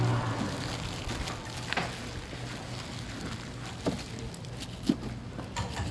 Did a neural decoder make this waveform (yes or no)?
no